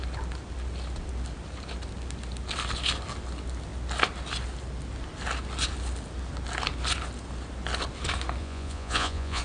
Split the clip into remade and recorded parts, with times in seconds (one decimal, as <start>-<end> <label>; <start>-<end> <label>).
0.0-8.4 recorded; 8.4-9.4 remade